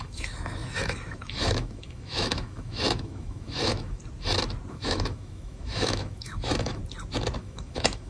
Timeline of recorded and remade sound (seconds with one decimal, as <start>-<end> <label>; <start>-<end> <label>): 0.0-4.0 remade; 4.0-4.7 recorded; 4.7-6.8 remade; 6.8-7.4 recorded; 7.4-8.1 remade